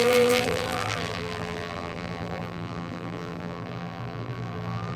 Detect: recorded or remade remade